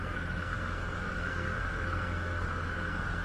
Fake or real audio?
fake